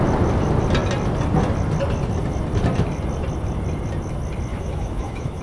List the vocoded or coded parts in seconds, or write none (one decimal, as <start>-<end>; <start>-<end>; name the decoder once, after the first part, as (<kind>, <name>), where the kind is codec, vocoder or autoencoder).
4.5-5.4 (autoencoder, DAC-VAE)